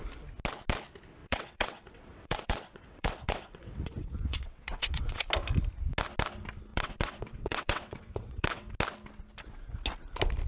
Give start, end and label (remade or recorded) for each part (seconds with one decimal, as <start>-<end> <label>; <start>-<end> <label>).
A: 0.0-1.2 recorded; 1.2-5.3 remade; 5.3-6.7 recorded; 6.7-8.7 remade; 8.7-10.5 recorded